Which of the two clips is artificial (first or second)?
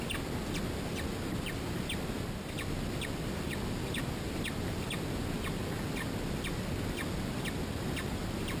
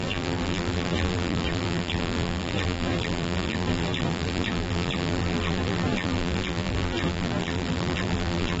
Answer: second